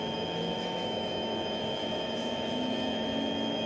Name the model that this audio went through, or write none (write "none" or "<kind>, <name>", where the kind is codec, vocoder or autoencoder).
autoencoder, DAC-VAE